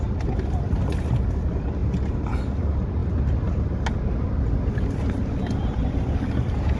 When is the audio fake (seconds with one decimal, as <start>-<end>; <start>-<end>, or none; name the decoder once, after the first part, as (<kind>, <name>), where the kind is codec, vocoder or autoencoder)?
none